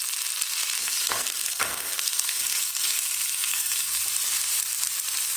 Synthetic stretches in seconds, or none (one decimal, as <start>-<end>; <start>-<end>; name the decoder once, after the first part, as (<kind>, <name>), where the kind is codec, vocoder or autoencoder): 0.8-4.0 (codec, SNAC)